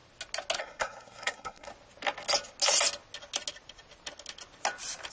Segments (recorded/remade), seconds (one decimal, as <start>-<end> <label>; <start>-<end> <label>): 0.0-0.6 recorded; 0.6-1.7 remade; 1.7-5.1 recorded